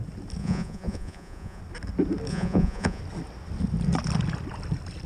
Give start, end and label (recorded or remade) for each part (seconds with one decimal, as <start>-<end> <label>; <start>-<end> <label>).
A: 0.0-0.4 recorded; 0.4-1.6 remade; 1.6-2.3 recorded; 2.3-3.0 remade; 3.0-5.1 recorded